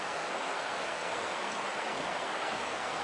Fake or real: fake